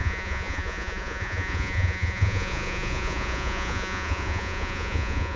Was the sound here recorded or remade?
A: remade